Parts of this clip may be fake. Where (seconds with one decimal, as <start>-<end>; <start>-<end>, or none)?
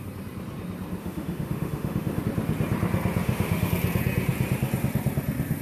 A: 1.0-2.2; 3.2-3.7